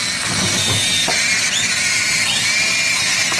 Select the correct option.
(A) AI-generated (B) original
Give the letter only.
B